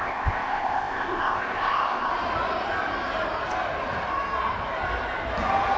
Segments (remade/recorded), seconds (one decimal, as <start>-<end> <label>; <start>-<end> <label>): 0.0-2.1 remade; 2.1-5.8 recorded